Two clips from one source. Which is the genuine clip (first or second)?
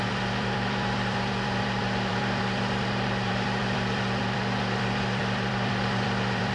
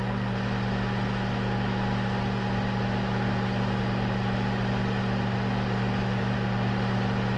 second